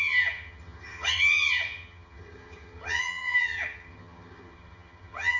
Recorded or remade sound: remade